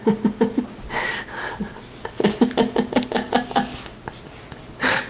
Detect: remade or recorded recorded